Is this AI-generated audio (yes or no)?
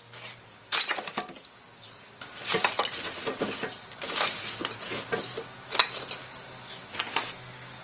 no